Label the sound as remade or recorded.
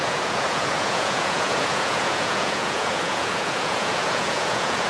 remade